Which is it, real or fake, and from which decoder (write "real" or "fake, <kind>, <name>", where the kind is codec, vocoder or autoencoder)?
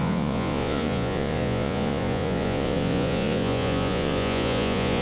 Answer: fake, vocoder, Vocos